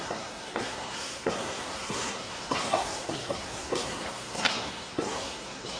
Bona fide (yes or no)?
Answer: no